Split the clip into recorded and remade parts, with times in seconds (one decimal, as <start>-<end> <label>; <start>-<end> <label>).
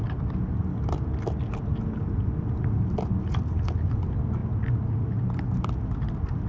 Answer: 0.0-6.5 recorded